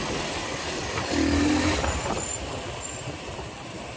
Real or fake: real